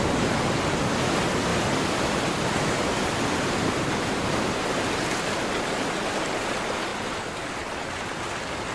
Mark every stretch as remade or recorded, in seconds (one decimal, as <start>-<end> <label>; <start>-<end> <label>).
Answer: 0.0-1.5 recorded; 1.5-4.6 remade; 4.6-8.7 recorded